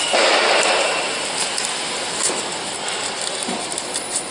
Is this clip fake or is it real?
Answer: real